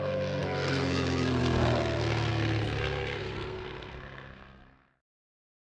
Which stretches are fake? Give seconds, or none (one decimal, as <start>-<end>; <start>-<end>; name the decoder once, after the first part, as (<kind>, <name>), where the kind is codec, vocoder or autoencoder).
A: 0.0-5.6 (codec, SNAC)